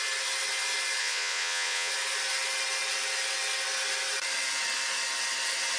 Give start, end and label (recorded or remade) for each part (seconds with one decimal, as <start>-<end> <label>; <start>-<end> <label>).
0.0-1.0 recorded; 1.0-1.9 remade; 1.9-5.8 recorded